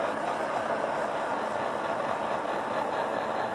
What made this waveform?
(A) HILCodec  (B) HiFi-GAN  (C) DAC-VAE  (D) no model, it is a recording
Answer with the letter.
D